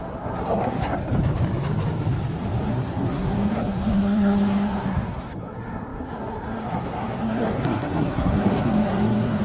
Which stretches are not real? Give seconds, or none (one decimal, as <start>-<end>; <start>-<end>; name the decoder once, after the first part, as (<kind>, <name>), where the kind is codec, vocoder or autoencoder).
0.0-1.0 (codec, SNAC); 2.7-9.4